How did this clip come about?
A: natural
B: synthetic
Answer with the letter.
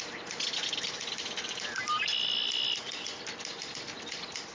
A